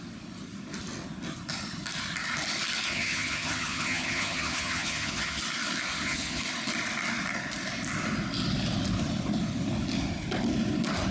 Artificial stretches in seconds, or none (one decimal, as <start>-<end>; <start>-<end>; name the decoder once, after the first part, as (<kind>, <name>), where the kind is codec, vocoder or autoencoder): 2.9-5.4 (vocoder, HiFi-GAN); 5.9-6.4